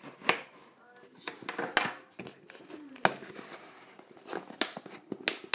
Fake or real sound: real